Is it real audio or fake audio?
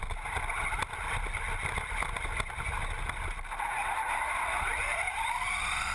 real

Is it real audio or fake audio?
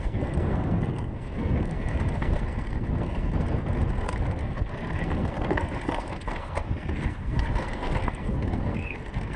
fake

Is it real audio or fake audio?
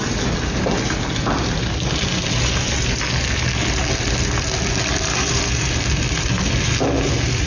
real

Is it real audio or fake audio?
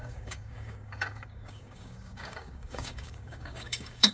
fake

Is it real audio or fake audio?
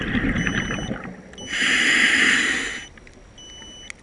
real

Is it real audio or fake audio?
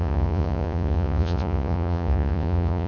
fake